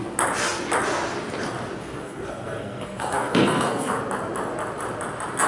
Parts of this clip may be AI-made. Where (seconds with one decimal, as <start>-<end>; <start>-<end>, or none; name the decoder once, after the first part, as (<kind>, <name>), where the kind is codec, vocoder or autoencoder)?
1.8-4.0 (codec, SNAC)